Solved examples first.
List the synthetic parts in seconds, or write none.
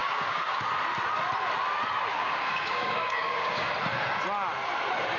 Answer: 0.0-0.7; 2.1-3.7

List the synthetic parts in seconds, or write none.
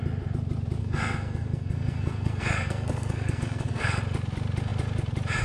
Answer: 0.8-4.0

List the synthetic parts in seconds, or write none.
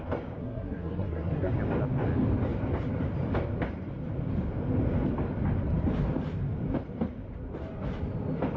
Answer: 0.4-1.5